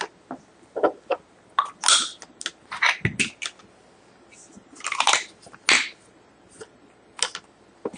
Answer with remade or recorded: recorded